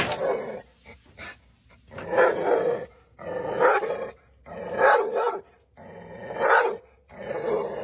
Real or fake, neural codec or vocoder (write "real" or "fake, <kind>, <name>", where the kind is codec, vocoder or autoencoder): real